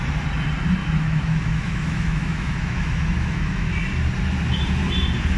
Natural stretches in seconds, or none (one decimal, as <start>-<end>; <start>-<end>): 0.0-0.8; 3.7-5.4